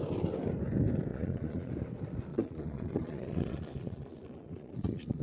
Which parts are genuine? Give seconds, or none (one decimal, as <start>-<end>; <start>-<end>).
0.0-1.1; 1.7-2.3